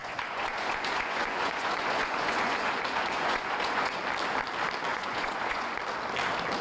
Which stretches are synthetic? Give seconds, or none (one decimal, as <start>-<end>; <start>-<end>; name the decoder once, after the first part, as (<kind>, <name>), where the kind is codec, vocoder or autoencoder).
0.0-4.0 (vocoder, Vocos); 4.9-5.7